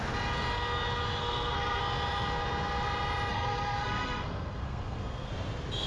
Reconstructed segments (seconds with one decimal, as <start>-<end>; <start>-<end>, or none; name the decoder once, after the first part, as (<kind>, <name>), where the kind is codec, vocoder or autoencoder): 1.2-1.8 (codec, SNAC); 3.3-5.3